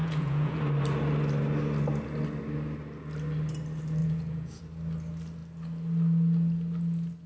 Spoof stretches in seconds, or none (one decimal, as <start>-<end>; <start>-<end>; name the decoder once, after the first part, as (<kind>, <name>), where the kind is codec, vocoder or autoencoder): 0.0-0.6 (vocoder, Vocos); 4.0-4.6